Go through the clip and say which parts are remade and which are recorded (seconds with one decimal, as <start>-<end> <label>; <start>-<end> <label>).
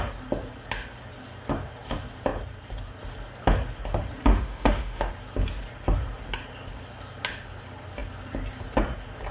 0.0-4.3 recorded; 4.3-5.1 remade; 5.1-9.3 recorded